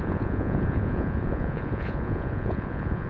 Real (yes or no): no